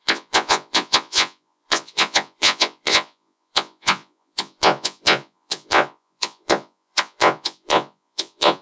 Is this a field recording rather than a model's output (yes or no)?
no